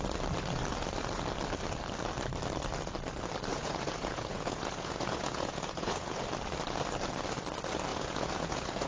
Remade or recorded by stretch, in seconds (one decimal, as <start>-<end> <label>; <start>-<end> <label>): 0.0-3.5 recorded; 3.5-6.2 remade; 6.2-7.9 recorded; 7.9-8.9 remade